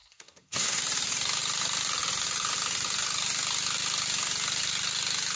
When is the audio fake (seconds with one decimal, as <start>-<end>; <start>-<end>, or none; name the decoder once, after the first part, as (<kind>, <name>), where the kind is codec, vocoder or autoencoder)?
0.0-0.8 (codec, SNAC)